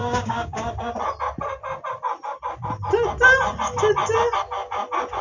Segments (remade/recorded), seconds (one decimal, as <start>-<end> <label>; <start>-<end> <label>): 0.0-0.7 remade; 0.7-5.2 recorded